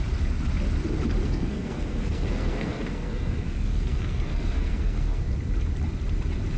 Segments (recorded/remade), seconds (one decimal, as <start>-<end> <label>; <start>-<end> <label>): 0.0-1.2 recorded; 1.2-5.2 remade; 5.2-6.6 recorded